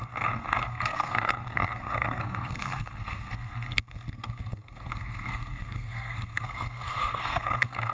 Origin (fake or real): fake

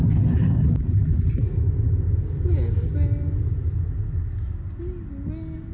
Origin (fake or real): real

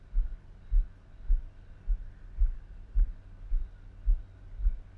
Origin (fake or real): real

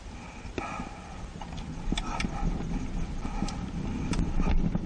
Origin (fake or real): real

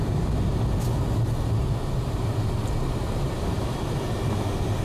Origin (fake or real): real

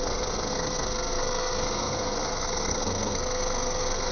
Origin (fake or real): fake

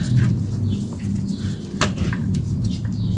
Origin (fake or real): real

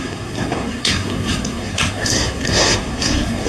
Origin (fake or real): fake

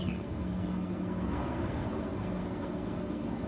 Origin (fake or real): fake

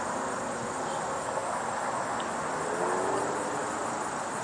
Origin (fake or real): real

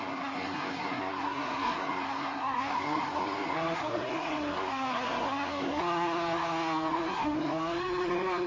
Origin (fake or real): fake